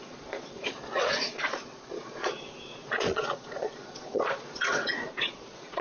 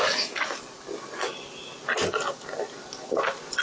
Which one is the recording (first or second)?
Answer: second